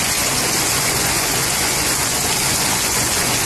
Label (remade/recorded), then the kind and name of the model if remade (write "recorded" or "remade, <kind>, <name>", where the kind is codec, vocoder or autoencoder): remade, vocoder, Vocos